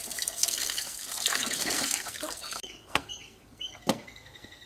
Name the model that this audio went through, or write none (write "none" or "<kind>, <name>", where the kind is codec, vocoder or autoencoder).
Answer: codec, SNAC